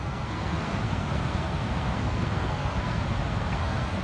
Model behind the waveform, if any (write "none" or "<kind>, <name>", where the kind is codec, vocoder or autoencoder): codec, SNAC